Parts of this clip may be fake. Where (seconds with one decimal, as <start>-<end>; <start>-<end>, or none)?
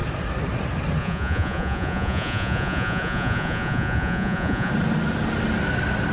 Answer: 1.0-4.7